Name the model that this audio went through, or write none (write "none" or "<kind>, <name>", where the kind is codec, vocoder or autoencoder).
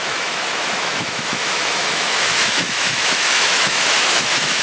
autoencoder, DAC-VAE